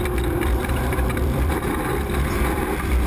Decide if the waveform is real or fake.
fake